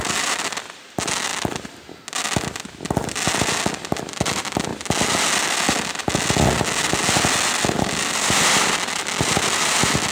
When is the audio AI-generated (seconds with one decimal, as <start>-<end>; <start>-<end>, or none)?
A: 0.0-1.3; 3.7-4.7; 7.8-10.1